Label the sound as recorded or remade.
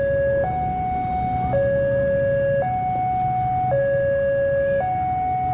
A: recorded